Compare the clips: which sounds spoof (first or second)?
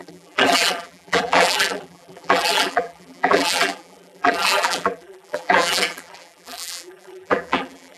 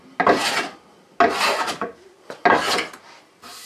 first